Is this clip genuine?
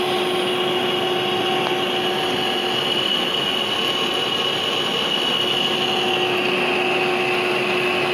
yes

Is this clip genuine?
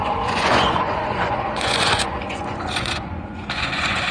no